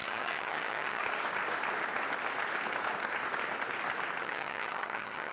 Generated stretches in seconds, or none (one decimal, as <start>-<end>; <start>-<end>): 0.0-1.0; 4.2-5.3